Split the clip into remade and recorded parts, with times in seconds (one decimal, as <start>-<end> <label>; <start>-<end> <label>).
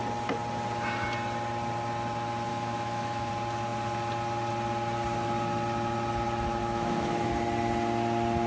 0.0-2.5 recorded; 2.5-3.3 remade; 3.3-6.6 recorded; 6.6-7.3 remade; 7.3-8.5 recorded